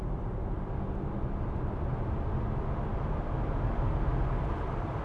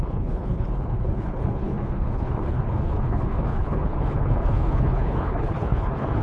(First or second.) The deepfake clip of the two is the second